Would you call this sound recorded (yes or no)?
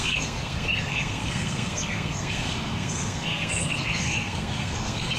no